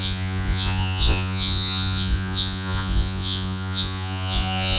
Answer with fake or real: fake